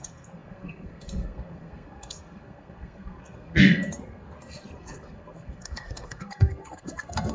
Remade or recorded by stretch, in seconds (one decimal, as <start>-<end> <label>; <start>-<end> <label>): 0.0-7.3 remade